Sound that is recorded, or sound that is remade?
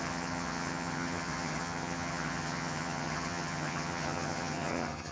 remade